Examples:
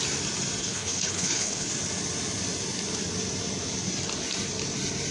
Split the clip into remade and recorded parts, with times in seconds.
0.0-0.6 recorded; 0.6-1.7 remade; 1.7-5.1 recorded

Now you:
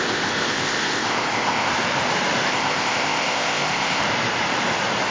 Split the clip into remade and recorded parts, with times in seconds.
0.0-1.7 remade; 1.7-2.5 recorded; 2.5-4.0 remade; 4.0-5.1 recorded

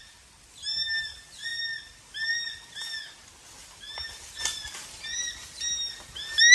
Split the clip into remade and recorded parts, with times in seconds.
0.0-6.5 recorded

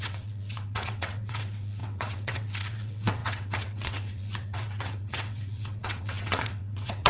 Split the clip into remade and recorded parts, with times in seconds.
0.0-7.1 remade